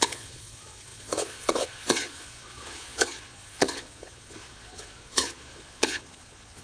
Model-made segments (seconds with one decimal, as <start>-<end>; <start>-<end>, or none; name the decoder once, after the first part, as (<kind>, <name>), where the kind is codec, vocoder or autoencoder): 0.0-6.6 (vocoder, Vocos)